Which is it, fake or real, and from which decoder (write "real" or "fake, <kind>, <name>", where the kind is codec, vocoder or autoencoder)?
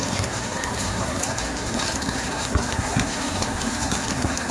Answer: fake, codec, SNAC